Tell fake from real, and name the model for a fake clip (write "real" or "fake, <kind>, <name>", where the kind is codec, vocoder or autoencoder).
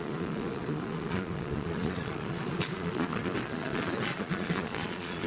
fake, vocoder, Vocos